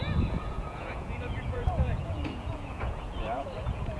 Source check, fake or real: fake